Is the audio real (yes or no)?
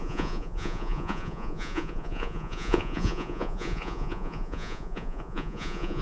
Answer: no